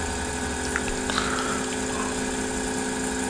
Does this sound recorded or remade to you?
recorded